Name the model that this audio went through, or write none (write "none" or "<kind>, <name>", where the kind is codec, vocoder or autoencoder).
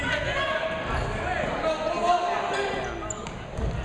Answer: none